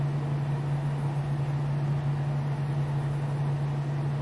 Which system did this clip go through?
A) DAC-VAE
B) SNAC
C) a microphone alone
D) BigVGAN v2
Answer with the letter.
C